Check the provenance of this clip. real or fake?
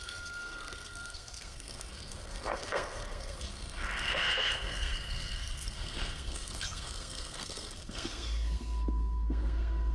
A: fake